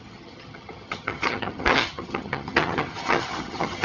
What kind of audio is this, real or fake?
fake